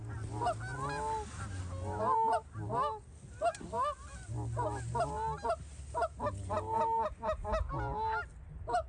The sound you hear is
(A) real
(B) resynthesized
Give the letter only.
A